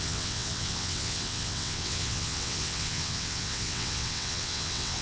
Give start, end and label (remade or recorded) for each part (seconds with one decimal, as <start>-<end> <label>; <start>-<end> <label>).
0.0-5.0 remade